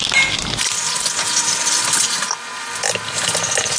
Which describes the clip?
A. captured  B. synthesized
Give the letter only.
A